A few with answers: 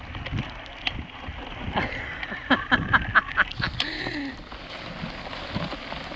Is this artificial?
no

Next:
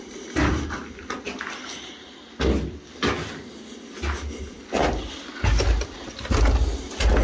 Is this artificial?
no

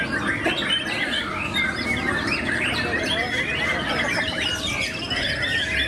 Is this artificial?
no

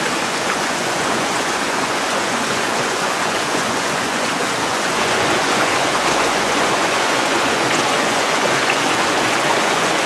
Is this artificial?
yes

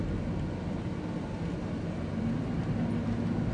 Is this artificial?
no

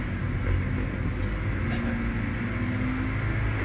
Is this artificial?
no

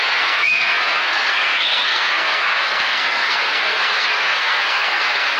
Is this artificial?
yes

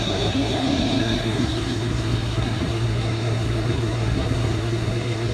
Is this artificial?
yes